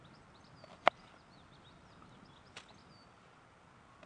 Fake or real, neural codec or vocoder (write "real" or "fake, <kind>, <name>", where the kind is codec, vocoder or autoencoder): real